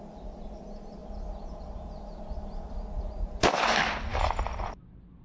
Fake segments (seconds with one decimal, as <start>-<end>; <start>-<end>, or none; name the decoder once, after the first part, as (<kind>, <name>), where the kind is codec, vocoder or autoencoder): none